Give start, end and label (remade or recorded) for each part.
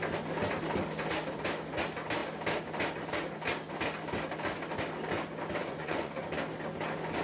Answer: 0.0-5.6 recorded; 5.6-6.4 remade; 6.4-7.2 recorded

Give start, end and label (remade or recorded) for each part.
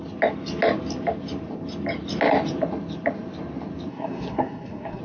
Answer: 0.0-3.9 recorded; 3.9-5.0 remade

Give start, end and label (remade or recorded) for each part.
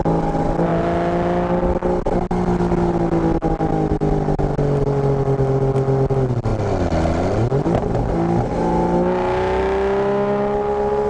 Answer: 0.0-11.1 recorded